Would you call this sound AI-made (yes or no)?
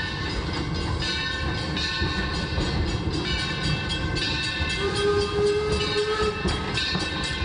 no